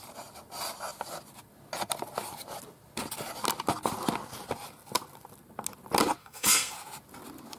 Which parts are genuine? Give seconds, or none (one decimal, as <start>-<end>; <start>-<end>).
0.0-6.2; 6.7-7.6